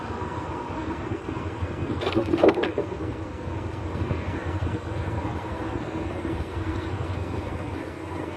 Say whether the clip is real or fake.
fake